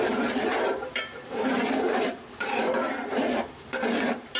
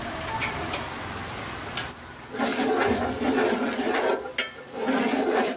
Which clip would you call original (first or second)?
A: second